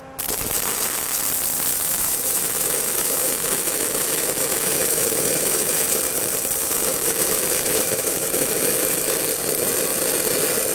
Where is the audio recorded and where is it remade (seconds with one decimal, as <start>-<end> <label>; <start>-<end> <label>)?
0.0-1.7 recorded; 1.7-6.0 remade; 6.0-6.6 recorded; 6.6-9.2 remade; 9.2-10.7 recorded